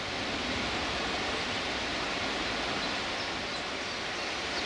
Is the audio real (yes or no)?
yes